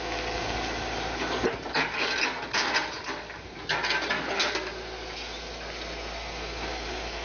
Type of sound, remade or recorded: recorded